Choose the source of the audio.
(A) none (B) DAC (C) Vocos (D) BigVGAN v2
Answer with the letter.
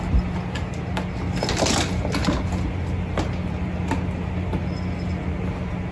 A